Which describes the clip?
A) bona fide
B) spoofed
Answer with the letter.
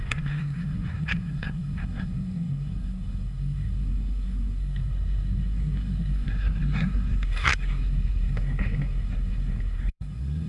B